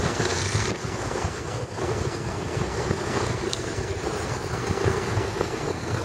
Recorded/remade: remade